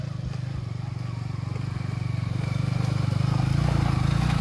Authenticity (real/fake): real